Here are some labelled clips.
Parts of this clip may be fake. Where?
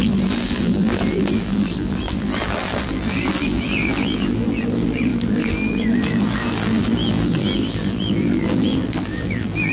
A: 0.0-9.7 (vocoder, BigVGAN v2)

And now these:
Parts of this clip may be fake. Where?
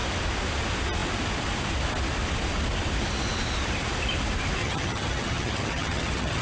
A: 4.6-6.4 (vocoder, HiFi-GAN)